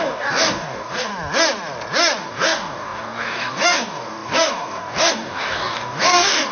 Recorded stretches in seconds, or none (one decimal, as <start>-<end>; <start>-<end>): 1.1-2.2